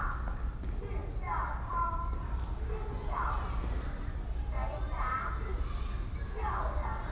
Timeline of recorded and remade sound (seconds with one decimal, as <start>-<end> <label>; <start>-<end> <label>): 0.0-7.1 recorded

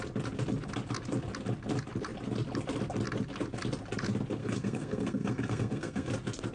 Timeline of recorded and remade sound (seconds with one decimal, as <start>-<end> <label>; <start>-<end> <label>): 0.0-4.4 recorded; 4.4-6.1 remade; 6.1-6.5 recorded

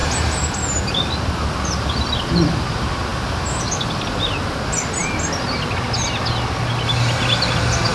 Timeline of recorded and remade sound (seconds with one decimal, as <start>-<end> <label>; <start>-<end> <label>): 0.0-7.9 recorded

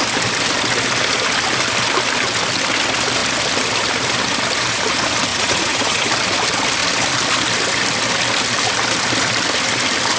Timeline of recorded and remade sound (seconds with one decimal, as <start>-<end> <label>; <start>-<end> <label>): 0.0-5.3 recorded; 5.3-6.1 remade; 6.1-10.2 recorded

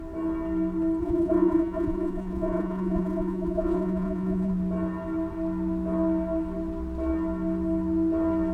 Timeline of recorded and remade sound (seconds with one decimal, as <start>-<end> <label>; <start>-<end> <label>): 0.0-1.0 recorded; 1.0-4.5 remade; 4.5-8.5 recorded

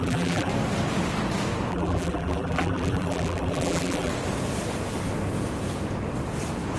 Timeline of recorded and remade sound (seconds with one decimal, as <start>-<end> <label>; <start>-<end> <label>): 0.0-0.5 remade; 0.5-1.7 recorded; 1.7-4.1 remade; 4.1-6.8 recorded

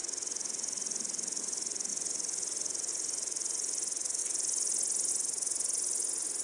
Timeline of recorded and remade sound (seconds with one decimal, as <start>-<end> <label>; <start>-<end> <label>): 0.0-6.4 recorded